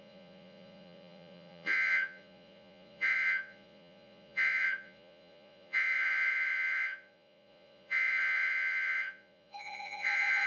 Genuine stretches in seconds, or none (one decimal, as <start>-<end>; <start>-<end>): none